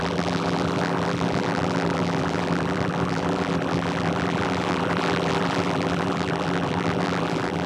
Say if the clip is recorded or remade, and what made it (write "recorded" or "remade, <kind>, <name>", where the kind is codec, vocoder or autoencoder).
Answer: remade, vocoder, BigVGAN v2